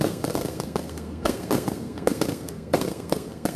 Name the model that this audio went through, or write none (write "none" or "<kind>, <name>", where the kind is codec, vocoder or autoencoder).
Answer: codec, SNAC